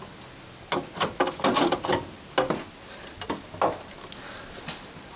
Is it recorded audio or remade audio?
recorded